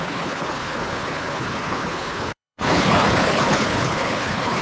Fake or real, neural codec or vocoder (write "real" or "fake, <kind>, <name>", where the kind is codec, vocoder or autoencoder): fake, codec, HILCodec